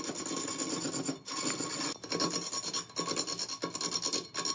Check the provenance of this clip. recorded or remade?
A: recorded